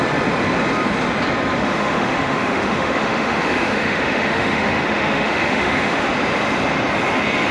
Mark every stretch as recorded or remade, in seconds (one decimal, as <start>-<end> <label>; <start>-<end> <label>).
0.0-1.6 recorded; 1.6-6.1 remade; 6.1-7.5 recorded